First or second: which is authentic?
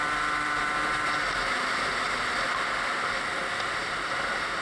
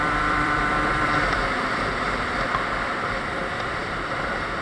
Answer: first